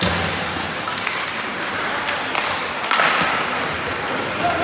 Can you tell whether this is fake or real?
real